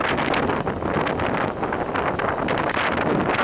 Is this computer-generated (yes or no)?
no